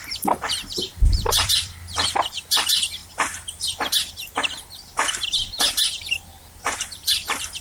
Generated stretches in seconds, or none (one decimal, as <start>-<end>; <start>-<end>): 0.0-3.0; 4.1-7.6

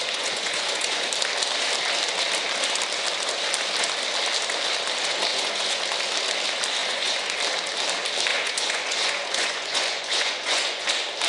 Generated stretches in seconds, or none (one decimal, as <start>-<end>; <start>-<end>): 0.0-1.1; 5.3-5.8; 6.8-7.4; 8.3-10.9

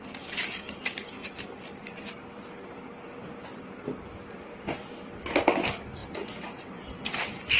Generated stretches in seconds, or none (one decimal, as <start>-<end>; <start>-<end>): 1.2-1.8; 6.0-6.8